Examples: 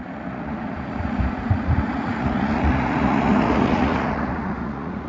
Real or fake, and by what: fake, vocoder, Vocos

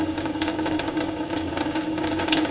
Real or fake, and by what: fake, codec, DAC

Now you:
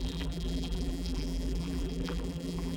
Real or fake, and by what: fake, vocoder, BigVGAN v2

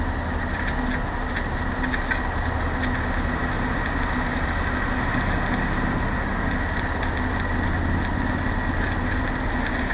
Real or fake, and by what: real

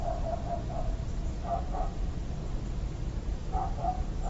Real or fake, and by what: real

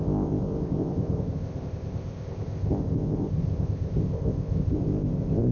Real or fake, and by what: fake, codec, ZipCodec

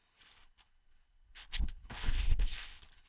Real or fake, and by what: fake, codec, HILCodec